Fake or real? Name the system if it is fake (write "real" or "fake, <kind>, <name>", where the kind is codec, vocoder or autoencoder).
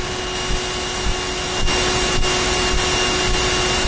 real